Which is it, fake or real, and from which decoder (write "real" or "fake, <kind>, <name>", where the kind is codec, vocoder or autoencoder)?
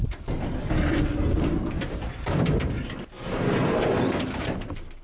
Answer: real